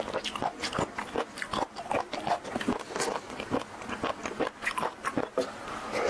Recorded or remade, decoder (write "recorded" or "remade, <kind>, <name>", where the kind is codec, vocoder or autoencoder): recorded